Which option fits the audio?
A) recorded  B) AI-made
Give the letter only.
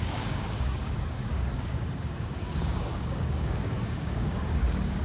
B